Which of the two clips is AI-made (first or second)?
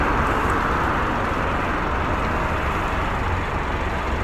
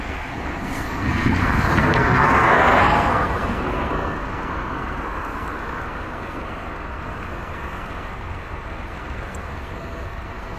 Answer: second